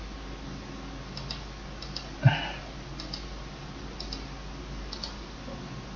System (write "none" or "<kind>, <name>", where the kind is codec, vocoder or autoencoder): none